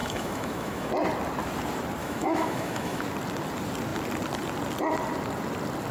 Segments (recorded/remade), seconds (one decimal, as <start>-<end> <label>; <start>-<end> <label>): 0.0-0.9 remade; 0.9-2.0 recorded; 2.0-3.0 remade; 3.0-5.9 recorded